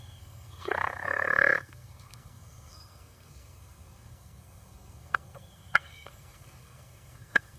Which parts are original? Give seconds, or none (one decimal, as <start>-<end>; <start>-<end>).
none